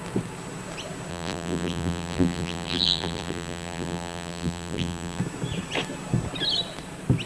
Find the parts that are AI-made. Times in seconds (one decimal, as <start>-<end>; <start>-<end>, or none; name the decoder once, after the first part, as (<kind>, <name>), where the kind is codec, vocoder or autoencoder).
1.1-5.2 (vocoder, BigVGAN v2)